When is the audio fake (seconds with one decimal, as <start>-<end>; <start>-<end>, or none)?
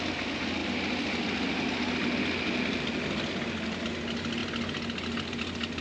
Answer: none